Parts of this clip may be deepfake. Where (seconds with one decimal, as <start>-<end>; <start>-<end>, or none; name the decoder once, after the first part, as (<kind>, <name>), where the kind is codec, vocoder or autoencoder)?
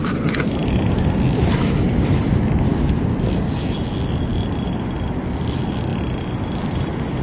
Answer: none